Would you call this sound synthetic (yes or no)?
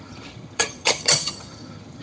yes